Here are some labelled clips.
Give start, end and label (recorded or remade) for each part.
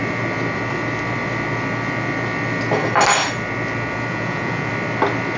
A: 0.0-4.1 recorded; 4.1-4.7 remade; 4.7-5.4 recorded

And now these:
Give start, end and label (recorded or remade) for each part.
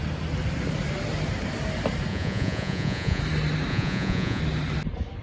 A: 0.0-2.1 recorded; 2.1-3.2 remade; 3.2-3.7 recorded; 3.7-4.4 remade; 4.4-5.2 recorded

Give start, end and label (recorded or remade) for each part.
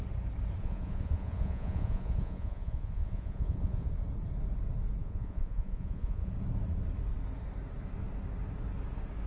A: 0.0-0.6 recorded; 0.6-3.9 remade; 3.9-5.0 recorded; 5.0-6.3 remade; 6.3-9.3 recorded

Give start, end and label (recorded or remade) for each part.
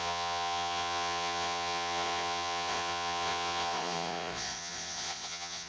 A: 0.0-5.7 remade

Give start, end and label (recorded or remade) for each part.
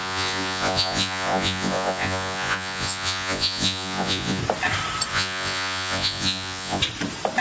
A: 0.0-4.4 remade; 4.4-5.1 recorded; 5.1-6.8 remade; 6.8-7.4 recorded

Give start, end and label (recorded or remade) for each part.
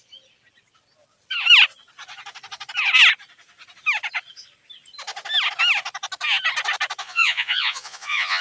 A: 0.0-7.0 recorded; 7.0-8.4 remade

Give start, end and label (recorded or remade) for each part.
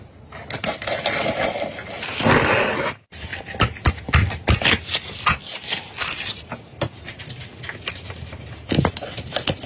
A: 0.0-9.7 recorded